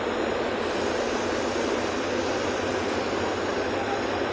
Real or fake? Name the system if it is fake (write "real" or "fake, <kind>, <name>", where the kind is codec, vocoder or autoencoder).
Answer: real